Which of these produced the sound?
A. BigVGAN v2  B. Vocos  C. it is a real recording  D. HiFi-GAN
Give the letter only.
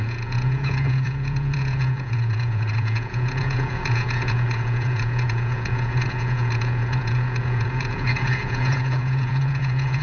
B